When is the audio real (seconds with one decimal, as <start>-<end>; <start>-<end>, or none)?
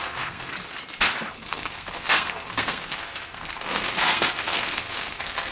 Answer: 0.5-1.3